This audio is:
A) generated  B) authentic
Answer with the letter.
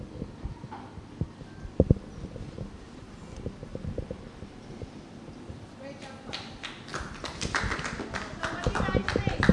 B